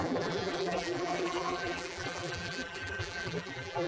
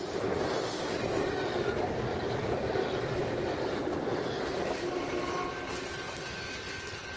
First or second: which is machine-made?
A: first